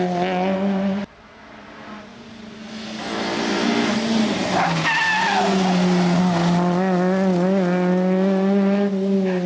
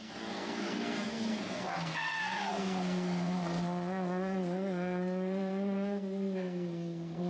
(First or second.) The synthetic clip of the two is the second